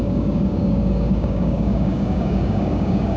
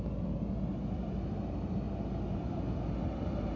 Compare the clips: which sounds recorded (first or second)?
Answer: second